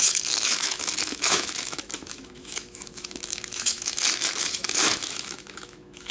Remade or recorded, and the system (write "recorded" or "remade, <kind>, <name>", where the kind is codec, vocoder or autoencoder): remade, autoencoder, DAC-VAE